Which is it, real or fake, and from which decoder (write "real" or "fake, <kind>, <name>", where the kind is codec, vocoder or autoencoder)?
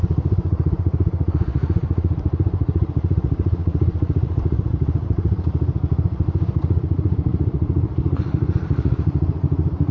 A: fake, vocoder, Vocos